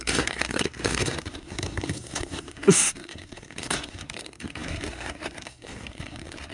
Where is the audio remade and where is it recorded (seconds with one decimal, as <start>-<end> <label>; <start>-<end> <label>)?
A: 0.0-6.5 remade